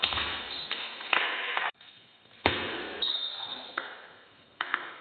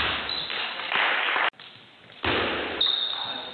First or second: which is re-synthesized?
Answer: first